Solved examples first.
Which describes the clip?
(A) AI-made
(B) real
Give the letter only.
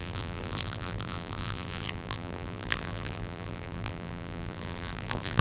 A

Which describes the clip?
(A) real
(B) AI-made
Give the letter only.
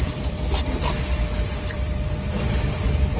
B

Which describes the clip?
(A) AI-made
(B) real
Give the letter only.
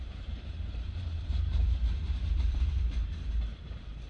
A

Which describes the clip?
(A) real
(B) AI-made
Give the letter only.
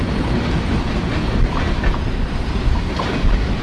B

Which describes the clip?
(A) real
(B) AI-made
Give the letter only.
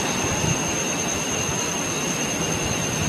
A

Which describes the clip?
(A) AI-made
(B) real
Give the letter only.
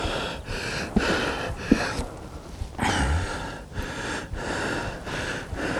A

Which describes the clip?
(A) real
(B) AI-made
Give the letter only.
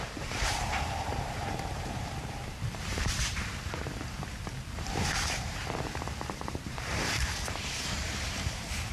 B